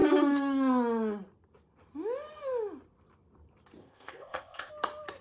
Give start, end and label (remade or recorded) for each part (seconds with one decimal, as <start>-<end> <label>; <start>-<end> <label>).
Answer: 0.0-3.8 recorded; 3.8-4.7 remade; 4.7-5.2 recorded